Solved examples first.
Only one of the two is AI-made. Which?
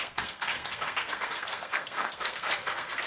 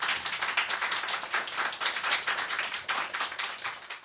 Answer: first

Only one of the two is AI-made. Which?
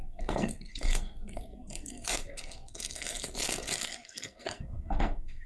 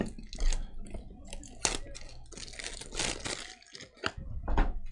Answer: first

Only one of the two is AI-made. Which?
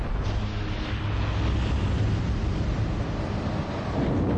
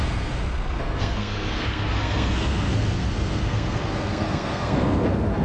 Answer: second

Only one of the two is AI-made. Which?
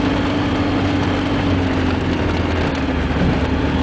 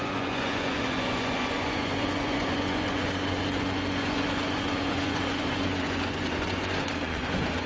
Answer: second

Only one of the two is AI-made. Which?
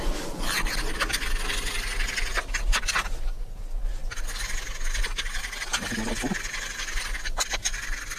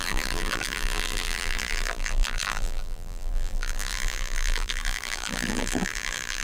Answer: second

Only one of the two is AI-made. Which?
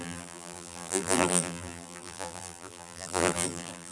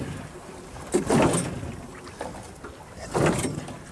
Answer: first